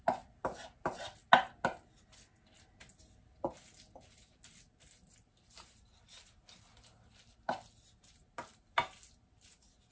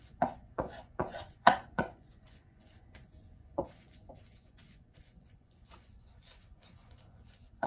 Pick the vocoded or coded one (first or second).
second